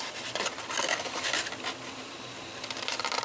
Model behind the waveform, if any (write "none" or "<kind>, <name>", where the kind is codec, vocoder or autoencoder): none